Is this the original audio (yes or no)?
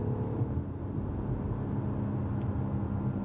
yes